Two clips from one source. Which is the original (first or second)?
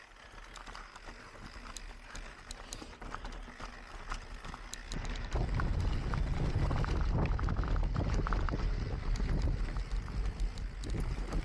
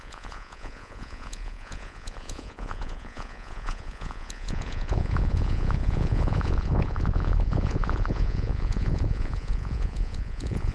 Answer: first